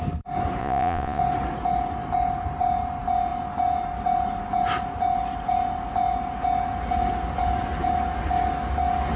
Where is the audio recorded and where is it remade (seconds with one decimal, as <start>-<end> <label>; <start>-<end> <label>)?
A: 0.0-0.6 recorded; 0.6-1.2 remade; 1.2-9.2 recorded